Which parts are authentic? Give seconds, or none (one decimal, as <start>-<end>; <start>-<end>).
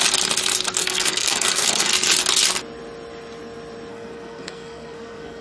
0.0-0.8; 1.9-3.9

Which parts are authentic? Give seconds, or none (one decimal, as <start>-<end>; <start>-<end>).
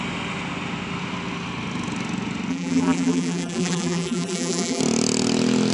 0.0-2.5; 4.8-5.7